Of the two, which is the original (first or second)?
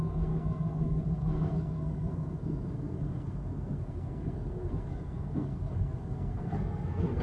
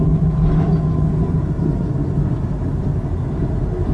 second